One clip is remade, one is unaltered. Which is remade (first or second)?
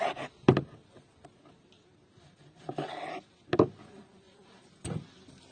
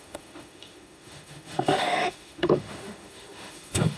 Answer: second